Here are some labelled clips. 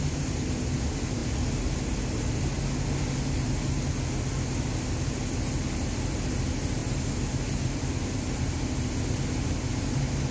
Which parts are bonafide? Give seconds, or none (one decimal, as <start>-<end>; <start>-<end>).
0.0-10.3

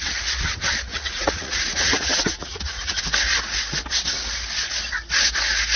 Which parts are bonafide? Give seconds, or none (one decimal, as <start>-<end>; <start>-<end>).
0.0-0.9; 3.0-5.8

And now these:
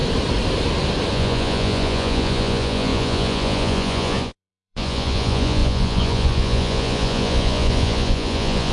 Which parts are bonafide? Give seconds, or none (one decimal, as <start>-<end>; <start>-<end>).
0.0-1.1